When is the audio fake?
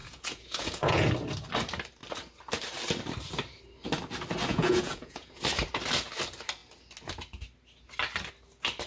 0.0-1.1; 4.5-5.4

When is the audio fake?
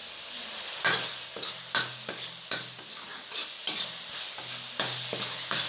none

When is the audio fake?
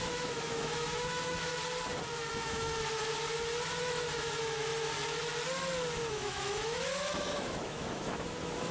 0.0-1.5; 2.3-2.7; 3.8-4.7; 6.1-8.7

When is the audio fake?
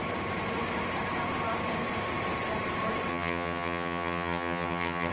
3.1-5.1